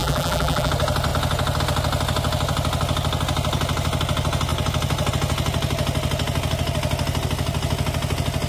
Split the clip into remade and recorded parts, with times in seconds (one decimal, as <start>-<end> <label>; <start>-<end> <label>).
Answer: 0.0-0.7 remade; 0.7-8.5 recorded